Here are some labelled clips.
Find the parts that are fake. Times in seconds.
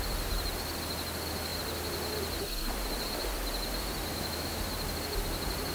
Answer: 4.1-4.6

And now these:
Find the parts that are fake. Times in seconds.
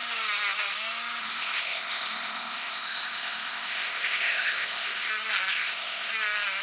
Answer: 1.2-5.1; 5.5-6.1